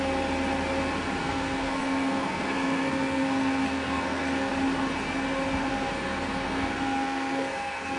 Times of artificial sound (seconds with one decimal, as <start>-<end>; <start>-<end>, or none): 1.2-4.5; 5.7-8.0